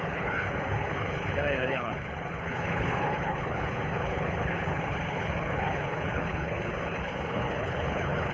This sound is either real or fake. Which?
fake